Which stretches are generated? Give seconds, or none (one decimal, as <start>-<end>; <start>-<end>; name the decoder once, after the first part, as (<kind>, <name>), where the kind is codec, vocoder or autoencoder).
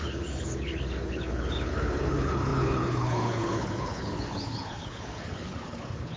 0.0-6.2 (codec, HILCodec)